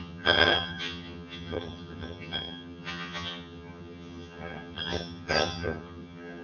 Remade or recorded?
remade